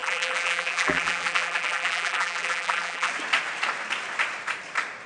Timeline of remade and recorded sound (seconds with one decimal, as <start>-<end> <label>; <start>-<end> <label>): 0.0-3.1 remade; 3.1-5.1 recorded